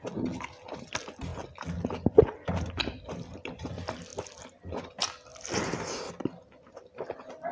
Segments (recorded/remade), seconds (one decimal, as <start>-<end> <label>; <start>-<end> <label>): 0.0-7.5 recorded